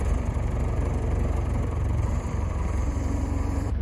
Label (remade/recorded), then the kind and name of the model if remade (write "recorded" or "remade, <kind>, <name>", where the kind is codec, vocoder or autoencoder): remade, vocoder, BigVGAN v2